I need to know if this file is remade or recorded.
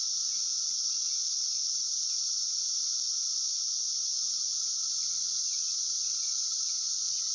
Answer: recorded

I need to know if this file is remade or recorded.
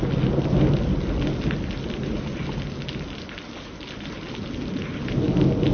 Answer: recorded